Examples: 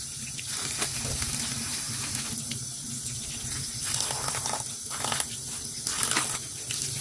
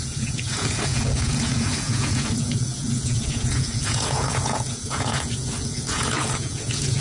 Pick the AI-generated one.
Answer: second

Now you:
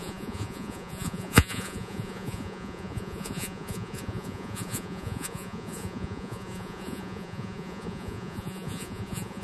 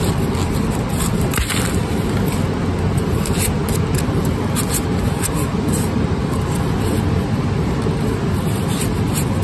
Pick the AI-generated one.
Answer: first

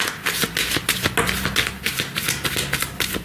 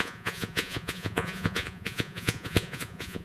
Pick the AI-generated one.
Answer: second